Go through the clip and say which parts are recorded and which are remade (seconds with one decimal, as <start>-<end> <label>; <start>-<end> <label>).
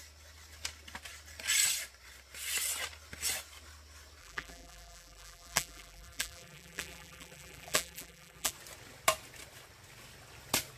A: 0.0-4.2 recorded; 4.2-8.5 remade; 8.5-10.8 recorded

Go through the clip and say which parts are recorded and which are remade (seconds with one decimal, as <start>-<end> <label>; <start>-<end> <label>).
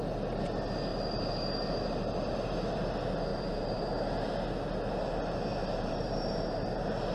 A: 0.0-3.3 recorded; 3.3-3.8 remade; 3.8-5.6 recorded; 5.6-6.3 remade; 6.3-7.1 recorded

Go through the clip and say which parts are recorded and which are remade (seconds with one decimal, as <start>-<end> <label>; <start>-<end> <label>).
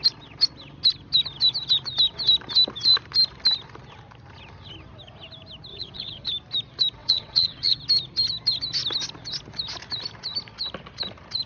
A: 0.0-5.7 recorded; 5.7-6.3 remade; 6.3-7.0 recorded; 7.0-7.8 remade; 7.8-11.5 recorded